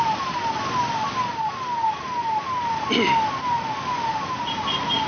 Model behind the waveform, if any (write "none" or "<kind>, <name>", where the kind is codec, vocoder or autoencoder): none